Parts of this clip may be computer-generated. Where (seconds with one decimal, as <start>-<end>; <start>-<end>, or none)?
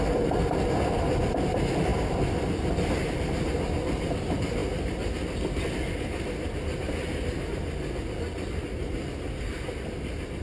none